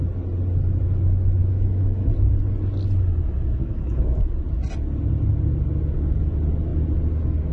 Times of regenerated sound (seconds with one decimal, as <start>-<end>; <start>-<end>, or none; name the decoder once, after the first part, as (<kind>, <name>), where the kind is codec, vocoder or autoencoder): 1.4-2.1 (autoencoder, DAC-VAE); 3.6-4.3